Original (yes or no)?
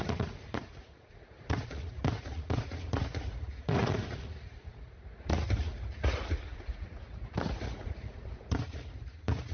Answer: no